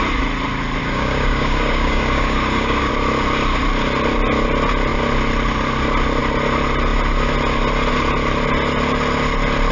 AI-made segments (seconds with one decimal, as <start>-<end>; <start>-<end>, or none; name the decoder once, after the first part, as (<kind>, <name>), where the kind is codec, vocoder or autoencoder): 0.8-2.9 (codec, DAC)